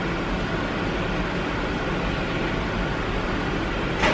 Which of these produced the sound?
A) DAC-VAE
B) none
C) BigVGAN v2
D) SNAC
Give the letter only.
B